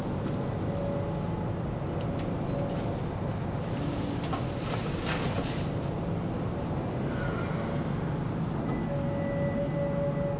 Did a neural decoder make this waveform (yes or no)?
no